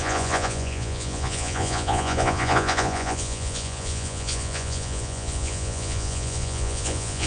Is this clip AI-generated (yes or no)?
yes